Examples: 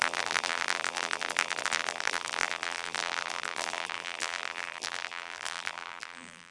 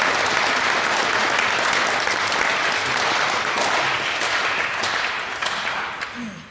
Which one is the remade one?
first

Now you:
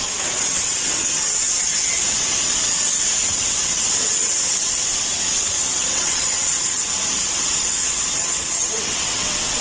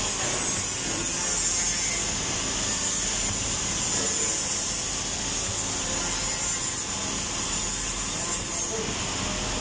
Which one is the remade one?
first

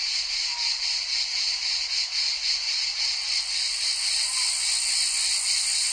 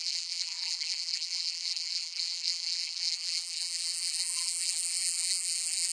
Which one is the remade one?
second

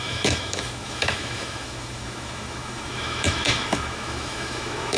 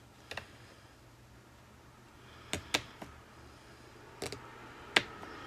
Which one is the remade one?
first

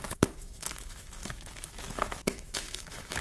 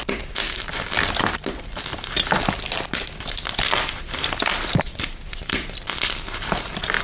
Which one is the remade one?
first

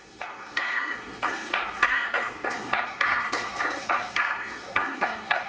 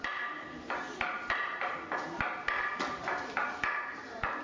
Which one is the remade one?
first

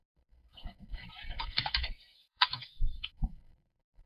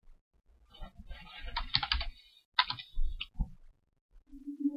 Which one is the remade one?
first